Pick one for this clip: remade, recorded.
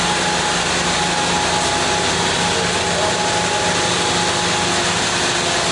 recorded